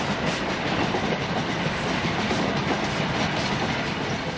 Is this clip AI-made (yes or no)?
no